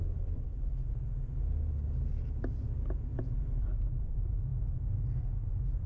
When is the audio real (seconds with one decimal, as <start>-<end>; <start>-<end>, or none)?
0.0-5.9